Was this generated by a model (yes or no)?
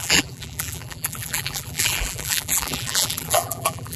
yes